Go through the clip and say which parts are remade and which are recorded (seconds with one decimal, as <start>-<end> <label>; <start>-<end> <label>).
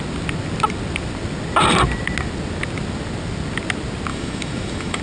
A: 0.0-4.1 recorded; 4.1-5.0 remade